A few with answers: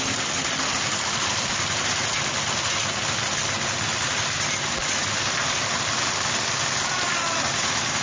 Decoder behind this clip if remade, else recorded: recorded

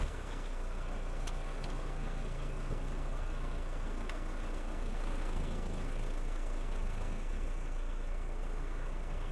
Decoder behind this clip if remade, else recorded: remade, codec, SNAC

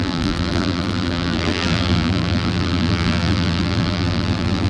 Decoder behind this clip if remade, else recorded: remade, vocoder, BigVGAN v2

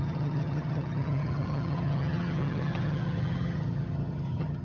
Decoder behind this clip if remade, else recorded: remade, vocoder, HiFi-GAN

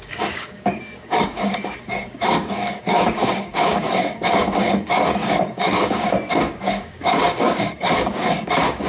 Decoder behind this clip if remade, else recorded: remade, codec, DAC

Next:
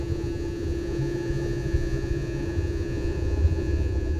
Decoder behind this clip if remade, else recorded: remade, vocoder, Vocos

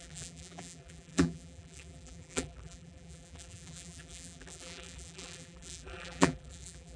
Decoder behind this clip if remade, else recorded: remade, vocoder, BigVGAN v2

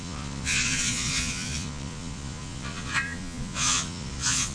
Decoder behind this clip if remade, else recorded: remade, vocoder, Vocos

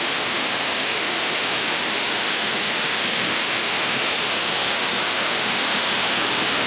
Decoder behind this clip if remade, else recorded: remade, autoencoder, DAC-VAE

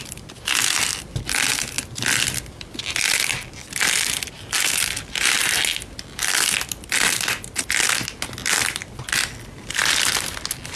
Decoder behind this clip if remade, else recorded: recorded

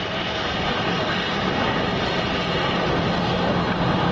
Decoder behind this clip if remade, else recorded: recorded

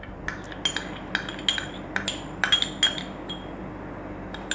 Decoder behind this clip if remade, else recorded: recorded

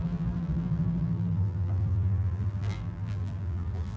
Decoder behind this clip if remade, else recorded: remade, vocoder, BigVGAN v2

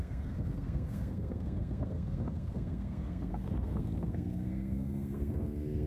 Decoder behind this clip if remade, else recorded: remade, codec, SNAC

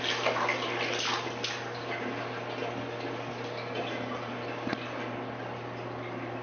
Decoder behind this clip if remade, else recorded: recorded